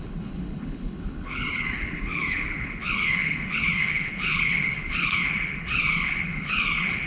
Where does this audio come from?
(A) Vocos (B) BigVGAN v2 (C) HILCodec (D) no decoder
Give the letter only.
C